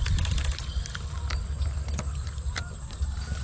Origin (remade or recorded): recorded